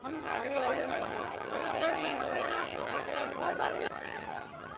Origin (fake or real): fake